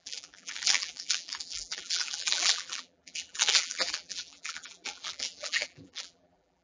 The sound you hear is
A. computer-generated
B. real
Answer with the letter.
A